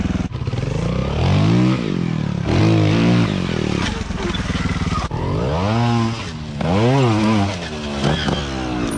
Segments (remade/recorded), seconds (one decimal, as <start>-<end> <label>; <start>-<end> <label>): 0.0-9.0 recorded